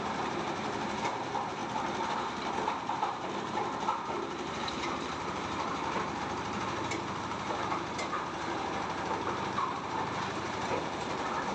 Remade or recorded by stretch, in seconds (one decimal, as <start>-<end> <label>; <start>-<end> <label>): 0.0-11.5 remade